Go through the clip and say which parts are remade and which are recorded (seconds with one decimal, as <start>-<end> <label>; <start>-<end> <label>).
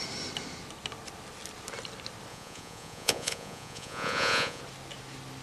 0.0-2.3 recorded; 2.3-4.6 remade; 4.6-5.4 recorded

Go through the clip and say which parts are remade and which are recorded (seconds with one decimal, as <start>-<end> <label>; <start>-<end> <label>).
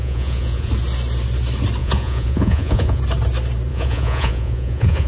0.0-0.7 remade; 0.7-1.8 recorded; 1.8-3.0 remade; 3.0-3.7 recorded; 3.7-5.1 remade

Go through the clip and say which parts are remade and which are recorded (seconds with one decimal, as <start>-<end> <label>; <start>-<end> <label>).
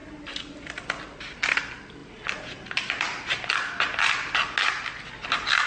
0.0-5.7 recorded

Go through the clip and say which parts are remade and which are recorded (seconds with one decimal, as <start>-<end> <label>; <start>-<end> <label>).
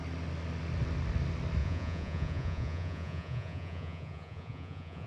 0.0-1.6 recorded; 1.6-5.1 remade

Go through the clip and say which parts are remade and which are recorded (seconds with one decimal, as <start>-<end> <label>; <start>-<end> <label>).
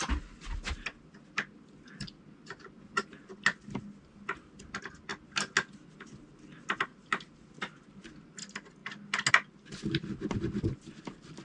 0.0-11.4 recorded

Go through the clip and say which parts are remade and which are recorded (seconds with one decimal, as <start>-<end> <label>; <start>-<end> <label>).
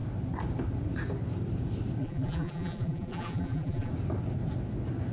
0.0-2.0 recorded; 2.0-3.9 remade; 3.9-5.1 recorded